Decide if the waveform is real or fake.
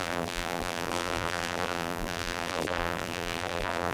fake